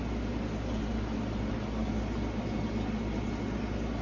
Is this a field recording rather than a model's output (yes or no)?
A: yes